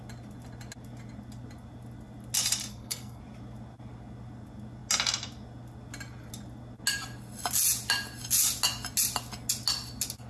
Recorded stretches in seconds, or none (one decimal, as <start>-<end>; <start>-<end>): 0.0-2.7; 3.2-10.3

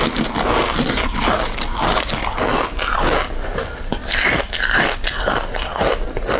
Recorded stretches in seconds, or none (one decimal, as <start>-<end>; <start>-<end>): 0.0-6.4

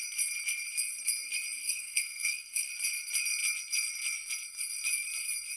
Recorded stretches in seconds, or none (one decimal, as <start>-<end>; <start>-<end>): 0.0-1.6; 2.7-5.6

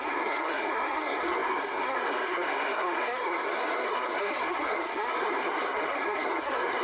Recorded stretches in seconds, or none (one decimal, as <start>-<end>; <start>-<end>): none